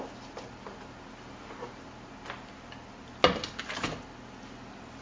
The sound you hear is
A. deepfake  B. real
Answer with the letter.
B